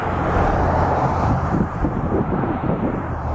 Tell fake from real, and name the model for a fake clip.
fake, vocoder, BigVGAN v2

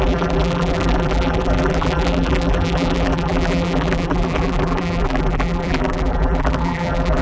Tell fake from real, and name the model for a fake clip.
fake, vocoder, BigVGAN v2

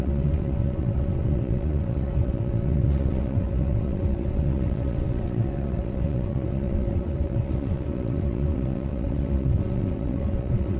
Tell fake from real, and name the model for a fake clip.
fake, vocoder, WaveNeXt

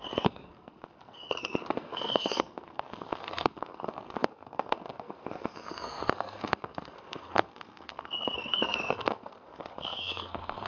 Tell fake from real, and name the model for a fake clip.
fake, codec, SNAC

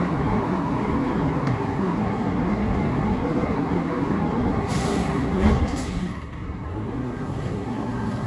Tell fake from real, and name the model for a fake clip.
fake, codec, SNAC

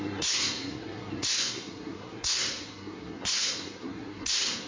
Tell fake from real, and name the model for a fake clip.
fake, codec, SNAC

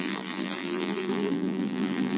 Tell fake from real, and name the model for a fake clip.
fake, vocoder, BigVGAN v2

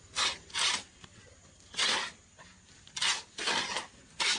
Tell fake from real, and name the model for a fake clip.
real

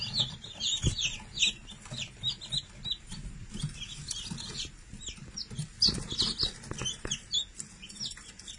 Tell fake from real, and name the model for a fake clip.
real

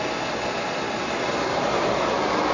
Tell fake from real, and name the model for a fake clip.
real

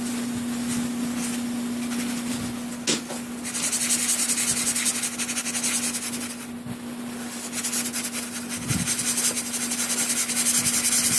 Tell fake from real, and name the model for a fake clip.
real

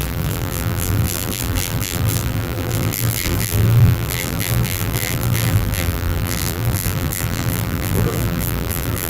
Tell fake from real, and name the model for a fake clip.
fake, vocoder, BigVGAN v2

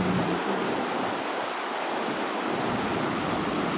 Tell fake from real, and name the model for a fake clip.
real